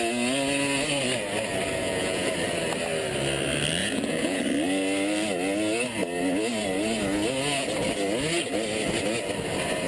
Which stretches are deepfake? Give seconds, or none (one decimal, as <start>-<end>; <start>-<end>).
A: 1.8-2.3; 3.8-4.4